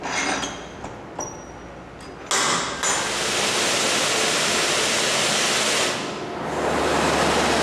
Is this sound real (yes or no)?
yes